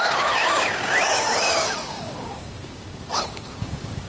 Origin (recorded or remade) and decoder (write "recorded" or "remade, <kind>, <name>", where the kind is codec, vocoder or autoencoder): remade, codec, DAC